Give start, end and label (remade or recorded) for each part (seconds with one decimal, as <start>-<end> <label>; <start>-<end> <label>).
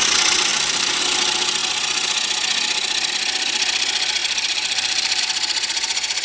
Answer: 0.0-0.5 recorded; 0.5-1.0 remade; 1.0-4.2 recorded; 4.2-5.2 remade; 5.2-6.2 recorded